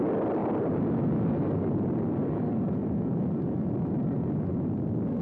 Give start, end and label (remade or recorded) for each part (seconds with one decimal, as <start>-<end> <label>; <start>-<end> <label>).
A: 0.0-5.2 recorded